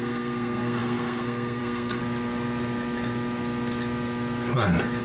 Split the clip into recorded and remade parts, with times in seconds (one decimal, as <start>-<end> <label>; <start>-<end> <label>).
0.0-2.0 remade; 2.0-5.0 recorded